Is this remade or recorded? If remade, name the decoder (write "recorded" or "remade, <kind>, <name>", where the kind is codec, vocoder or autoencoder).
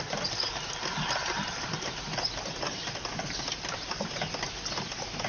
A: recorded